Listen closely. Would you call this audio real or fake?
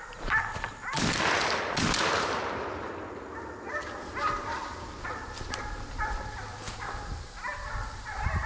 real